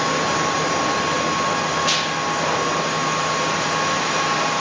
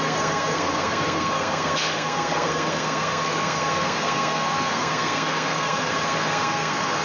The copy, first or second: second